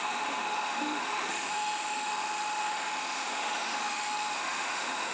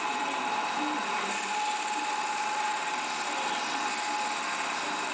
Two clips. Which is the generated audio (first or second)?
first